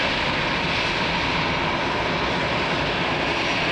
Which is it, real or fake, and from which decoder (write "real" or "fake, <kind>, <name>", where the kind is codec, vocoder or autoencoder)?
real